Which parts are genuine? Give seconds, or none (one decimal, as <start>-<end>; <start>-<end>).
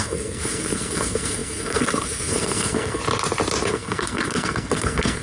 3.0-3.7